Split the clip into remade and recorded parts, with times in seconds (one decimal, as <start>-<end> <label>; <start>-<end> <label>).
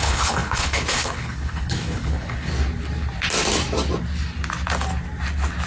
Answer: 0.0-2.5 remade; 2.5-5.7 recorded